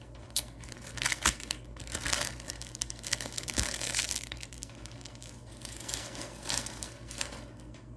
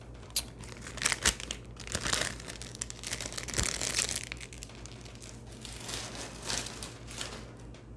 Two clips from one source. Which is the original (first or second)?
second